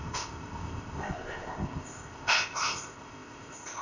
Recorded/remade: remade